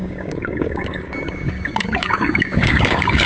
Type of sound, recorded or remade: remade